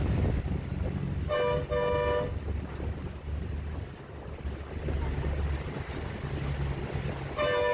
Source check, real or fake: real